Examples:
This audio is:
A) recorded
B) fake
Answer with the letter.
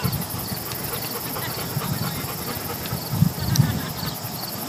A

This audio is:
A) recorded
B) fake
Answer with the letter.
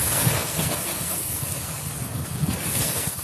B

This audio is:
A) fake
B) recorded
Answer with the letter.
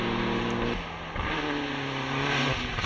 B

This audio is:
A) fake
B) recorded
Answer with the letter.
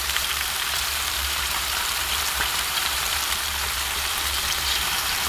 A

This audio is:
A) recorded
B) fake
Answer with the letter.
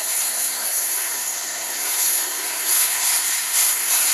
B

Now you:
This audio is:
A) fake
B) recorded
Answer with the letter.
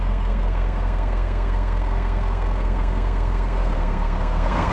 A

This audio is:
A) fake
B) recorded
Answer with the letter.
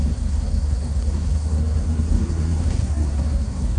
A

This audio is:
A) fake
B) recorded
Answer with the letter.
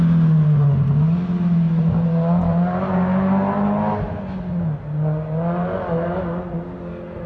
B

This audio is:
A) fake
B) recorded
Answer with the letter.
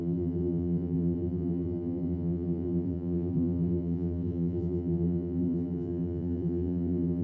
A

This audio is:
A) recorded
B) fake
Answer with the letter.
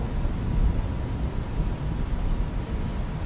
A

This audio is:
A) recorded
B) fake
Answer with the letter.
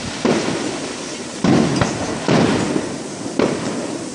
A